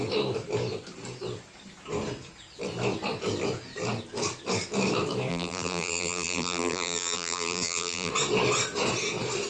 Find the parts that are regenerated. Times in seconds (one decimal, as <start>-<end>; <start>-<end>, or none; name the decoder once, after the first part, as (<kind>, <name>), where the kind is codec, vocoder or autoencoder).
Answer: 5.3-8.1 (vocoder, BigVGAN v2)

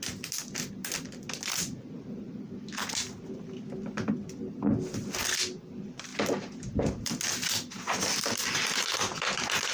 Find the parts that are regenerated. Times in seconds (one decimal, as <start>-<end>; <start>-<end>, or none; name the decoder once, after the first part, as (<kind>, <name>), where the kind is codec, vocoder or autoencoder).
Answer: 6.1-7.1 (vocoder, BigVGAN v2)

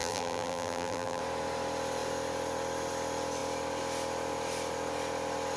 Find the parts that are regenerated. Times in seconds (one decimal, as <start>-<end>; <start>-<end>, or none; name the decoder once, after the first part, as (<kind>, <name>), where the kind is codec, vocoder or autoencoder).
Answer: 0.0-1.2 (vocoder, BigVGAN v2)

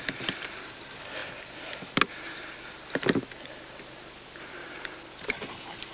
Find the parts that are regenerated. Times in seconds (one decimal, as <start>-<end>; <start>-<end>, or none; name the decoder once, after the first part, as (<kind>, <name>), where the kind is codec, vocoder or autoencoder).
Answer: none

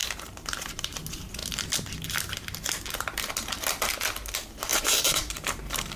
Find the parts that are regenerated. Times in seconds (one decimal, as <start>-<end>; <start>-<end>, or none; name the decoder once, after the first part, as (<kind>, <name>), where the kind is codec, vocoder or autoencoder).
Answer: 0.0-0.9 (vocoder, BigVGAN v2); 4.7-6.0